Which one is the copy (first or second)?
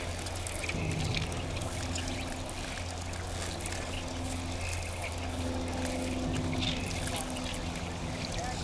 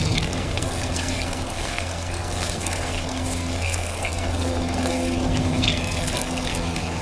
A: second